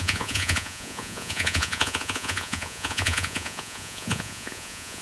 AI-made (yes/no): yes